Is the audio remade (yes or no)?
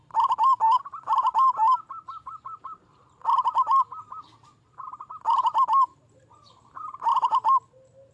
yes